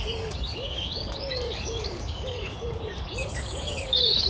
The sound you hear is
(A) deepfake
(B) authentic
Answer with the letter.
A